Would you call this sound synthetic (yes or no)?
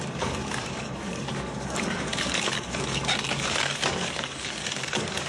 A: yes